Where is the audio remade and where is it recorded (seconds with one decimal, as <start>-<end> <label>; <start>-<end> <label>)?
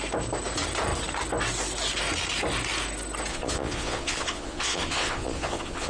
0.0-3.3 recorded; 3.3-5.9 remade